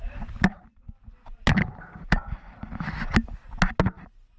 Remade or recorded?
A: recorded